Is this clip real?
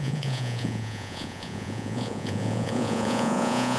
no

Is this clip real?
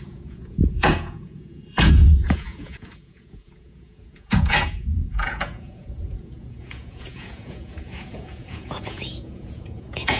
no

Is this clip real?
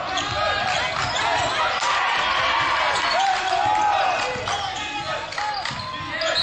yes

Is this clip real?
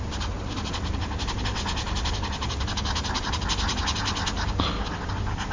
yes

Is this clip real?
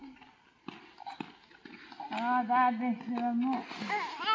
yes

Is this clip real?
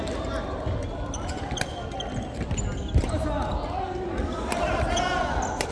yes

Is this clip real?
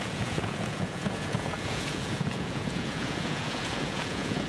no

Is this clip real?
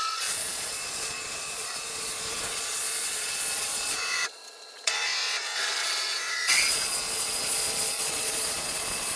no